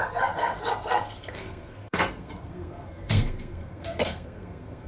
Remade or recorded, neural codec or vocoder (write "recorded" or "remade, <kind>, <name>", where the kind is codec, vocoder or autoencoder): remade, codec, SNAC